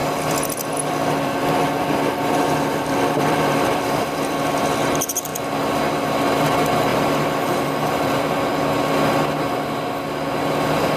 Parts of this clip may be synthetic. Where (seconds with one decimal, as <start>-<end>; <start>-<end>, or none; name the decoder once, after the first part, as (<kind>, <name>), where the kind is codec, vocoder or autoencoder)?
0.0-4.5 (vocoder, BigVGAN v2); 6.9-8.4